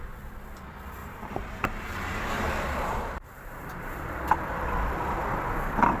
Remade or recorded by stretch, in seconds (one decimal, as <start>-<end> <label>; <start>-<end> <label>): 0.0-1.0 recorded; 1.0-4.6 remade; 4.6-6.0 recorded